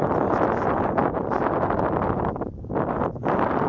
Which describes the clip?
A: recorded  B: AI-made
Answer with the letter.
A